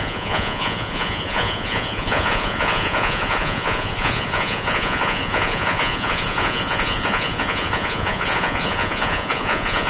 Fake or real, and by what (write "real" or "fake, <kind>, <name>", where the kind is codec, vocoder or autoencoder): fake, vocoder, Vocos